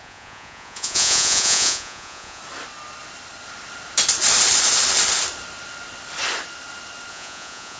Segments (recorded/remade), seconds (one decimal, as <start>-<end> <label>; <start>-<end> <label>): 0.0-2.4 remade; 2.4-7.1 recorded; 7.1-7.8 remade